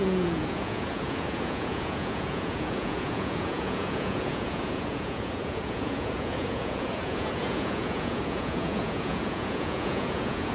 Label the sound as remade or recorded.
remade